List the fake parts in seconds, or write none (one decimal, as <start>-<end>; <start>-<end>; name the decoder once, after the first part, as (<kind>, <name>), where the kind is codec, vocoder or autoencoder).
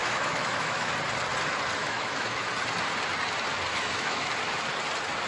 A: 0.0-0.9 (autoencoder, DAC-VAE); 1.8-2.5; 3.7-4.3